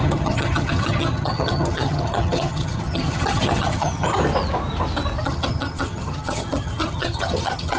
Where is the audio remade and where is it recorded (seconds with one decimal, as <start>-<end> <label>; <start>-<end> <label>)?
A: 0.0-4.1 remade; 4.1-5.2 recorded; 5.2-7.8 remade

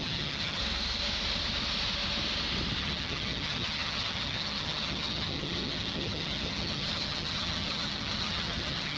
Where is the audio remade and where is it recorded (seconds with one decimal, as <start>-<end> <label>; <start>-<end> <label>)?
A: 0.0-0.6 remade; 0.6-2.8 recorded; 2.8-9.0 remade

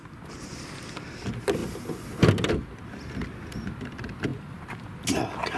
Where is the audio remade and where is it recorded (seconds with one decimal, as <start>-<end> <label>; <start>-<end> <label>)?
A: 0.0-5.6 recorded

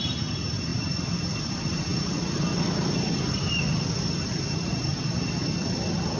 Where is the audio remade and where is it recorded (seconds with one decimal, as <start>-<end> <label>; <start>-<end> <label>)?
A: 0.0-6.2 recorded

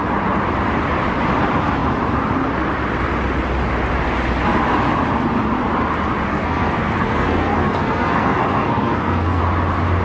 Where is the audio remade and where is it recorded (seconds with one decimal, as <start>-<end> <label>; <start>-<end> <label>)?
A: 0.0-6.3 recorded; 6.3-9.4 remade; 9.4-10.0 recorded

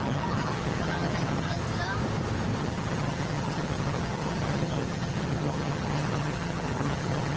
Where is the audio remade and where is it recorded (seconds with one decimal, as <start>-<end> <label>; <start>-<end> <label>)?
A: 0.0-1.6 remade; 1.6-2.6 recorded; 2.6-7.4 remade

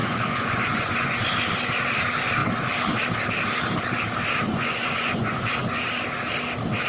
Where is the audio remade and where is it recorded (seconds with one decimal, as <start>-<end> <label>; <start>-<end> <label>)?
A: 0.0-1.2 remade; 1.2-4.5 recorded; 4.5-5.8 remade; 5.8-6.9 recorded

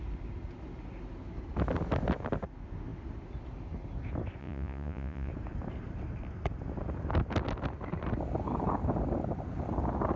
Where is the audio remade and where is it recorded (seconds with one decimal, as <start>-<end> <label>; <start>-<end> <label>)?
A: 0.0-4.4 recorded; 4.4-5.3 remade; 5.3-10.2 recorded